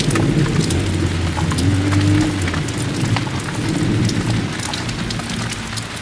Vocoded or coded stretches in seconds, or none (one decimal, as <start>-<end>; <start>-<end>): none